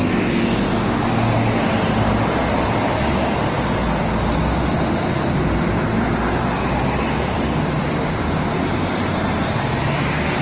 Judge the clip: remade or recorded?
recorded